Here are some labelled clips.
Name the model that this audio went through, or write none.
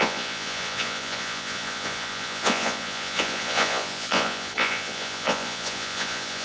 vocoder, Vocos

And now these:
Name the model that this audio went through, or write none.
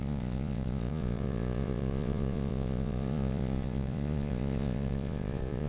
vocoder, Vocos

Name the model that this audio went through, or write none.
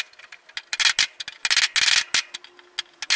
none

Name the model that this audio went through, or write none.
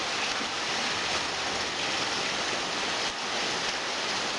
none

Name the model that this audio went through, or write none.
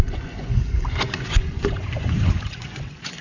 vocoder, Vocos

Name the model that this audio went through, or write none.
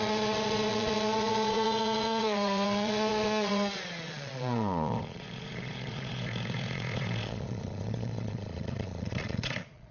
vocoder, Vocos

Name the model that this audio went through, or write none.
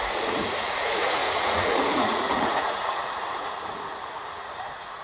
vocoder, Vocos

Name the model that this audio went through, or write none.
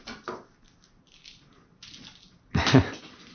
none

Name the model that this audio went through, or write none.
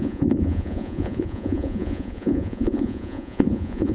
vocoder, Vocos